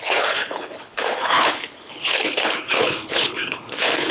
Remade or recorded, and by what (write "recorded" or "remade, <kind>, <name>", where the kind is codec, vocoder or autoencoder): remade, codec, HILCodec